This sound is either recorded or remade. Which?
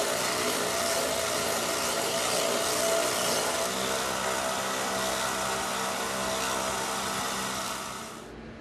recorded